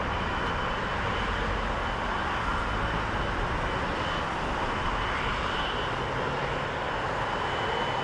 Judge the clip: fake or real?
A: real